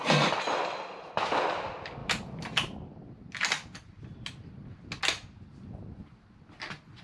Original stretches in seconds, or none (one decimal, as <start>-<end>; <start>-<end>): 0.0-7.0